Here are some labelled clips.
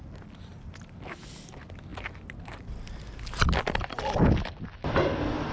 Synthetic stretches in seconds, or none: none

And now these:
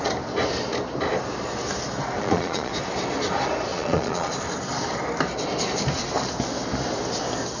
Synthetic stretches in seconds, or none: 2.2-2.7 (vocoder, Vocos); 3.7-4.3

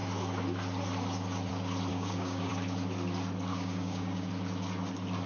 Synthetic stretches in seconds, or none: 1.9-2.5 (codec, DAC); 3.5-4.3